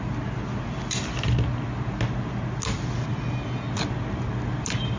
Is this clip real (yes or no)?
yes